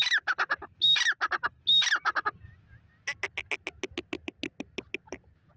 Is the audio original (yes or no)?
yes